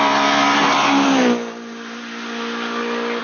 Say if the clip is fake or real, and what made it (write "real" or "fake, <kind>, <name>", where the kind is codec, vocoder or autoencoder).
real